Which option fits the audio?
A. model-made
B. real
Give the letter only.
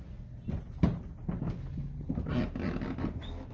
B